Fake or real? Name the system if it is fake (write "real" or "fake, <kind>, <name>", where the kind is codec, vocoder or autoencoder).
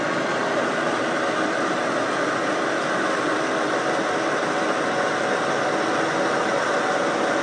real